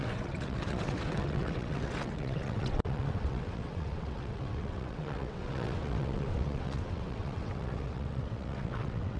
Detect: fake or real fake